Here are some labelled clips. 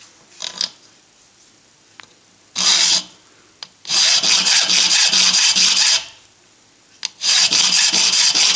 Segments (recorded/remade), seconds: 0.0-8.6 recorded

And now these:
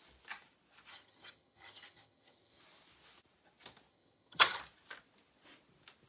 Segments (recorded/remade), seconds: 0.0-0.9 recorded; 0.9-2.6 remade; 2.6-3.9 recorded; 3.9-4.6 remade; 4.6-6.1 recorded

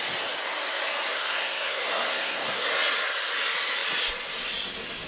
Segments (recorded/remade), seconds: 0.0-1.1 recorded; 1.1-2.7 remade; 2.7-5.1 recorded

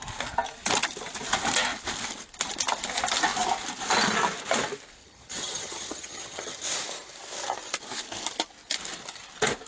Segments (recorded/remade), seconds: 0.0-5.0 recorded; 5.0-6.6 remade; 6.6-9.7 recorded